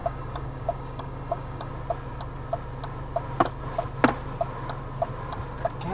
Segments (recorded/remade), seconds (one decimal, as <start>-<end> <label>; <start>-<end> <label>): 0.0-1.7 remade; 1.7-5.9 recorded